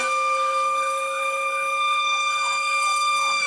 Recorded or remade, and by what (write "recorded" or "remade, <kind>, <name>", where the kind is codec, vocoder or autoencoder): remade, codec, SNAC